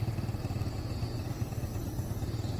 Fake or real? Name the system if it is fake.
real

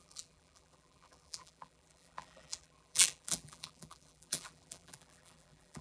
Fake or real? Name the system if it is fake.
fake, vocoder, BigVGAN v2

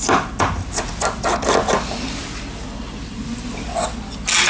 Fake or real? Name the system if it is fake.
real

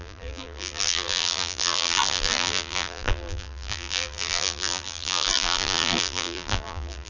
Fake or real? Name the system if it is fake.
fake, vocoder, BigVGAN v2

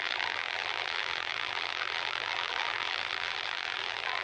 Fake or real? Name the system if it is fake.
fake, vocoder, BigVGAN v2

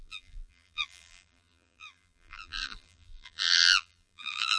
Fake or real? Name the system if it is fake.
fake, vocoder, BigVGAN v2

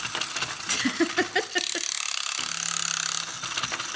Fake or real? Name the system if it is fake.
real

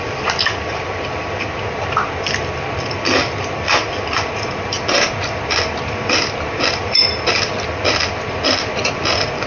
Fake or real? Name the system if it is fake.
fake, vocoder, BigVGAN v2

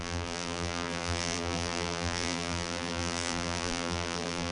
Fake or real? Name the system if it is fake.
fake, vocoder, BigVGAN v2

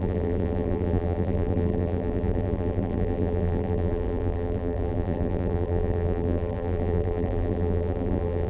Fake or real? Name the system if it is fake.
fake, vocoder, BigVGAN v2